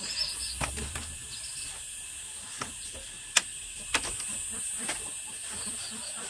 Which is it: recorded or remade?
recorded